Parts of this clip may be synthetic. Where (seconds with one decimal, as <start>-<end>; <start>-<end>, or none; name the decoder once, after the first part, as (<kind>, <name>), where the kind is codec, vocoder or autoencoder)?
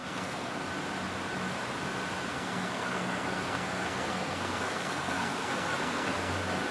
0.0-0.6 (codec, SNAC); 2.3-6.3